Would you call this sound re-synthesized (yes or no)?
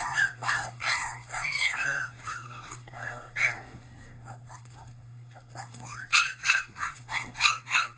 yes